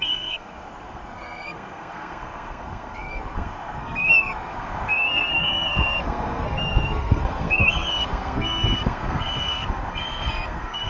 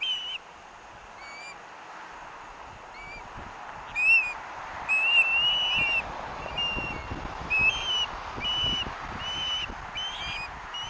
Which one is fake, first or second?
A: first